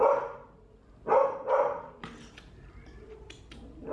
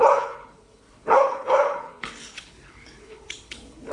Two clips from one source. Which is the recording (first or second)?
first